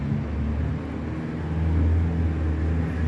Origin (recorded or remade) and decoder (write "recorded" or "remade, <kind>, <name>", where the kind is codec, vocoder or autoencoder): recorded